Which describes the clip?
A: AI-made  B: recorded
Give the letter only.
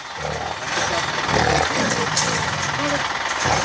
B